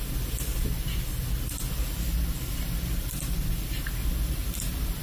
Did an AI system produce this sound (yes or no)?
no